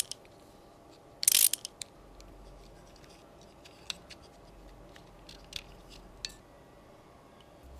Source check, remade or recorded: recorded